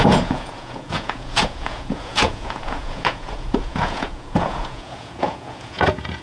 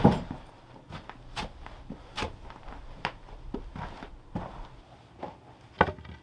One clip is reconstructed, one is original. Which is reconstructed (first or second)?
first